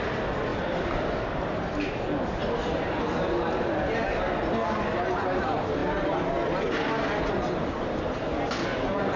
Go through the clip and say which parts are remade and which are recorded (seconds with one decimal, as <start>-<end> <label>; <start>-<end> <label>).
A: 0.0-9.2 recorded